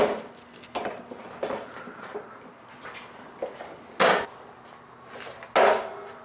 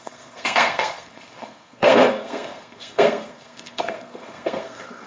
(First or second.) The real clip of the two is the first